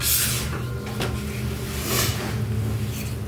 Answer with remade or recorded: recorded